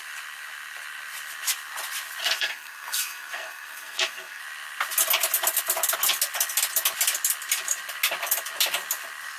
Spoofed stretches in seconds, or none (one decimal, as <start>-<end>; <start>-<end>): 2.2-4.4